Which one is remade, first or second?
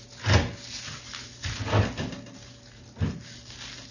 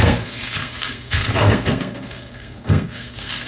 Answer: second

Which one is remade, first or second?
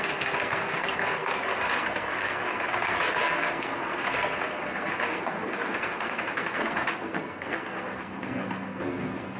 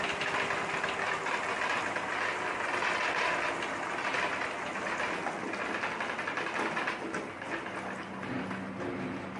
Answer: first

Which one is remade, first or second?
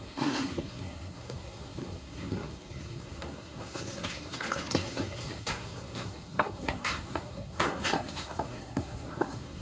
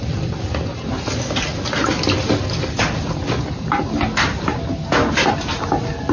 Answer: first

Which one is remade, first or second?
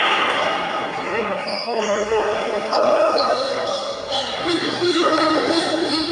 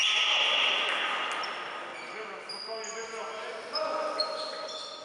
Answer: first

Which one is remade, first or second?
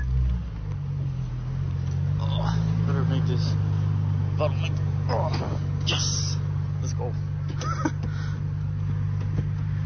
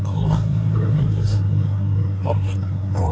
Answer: second